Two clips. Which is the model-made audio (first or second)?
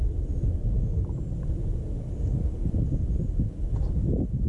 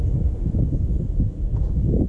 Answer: second